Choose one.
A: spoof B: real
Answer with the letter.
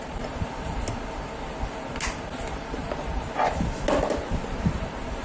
B